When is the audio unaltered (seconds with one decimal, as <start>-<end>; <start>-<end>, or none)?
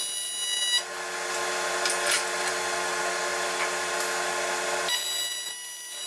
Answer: 0.0-6.1